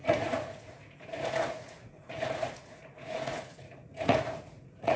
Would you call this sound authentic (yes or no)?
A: no